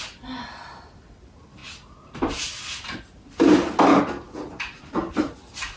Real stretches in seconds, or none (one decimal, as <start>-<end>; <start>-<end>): 0.0-5.8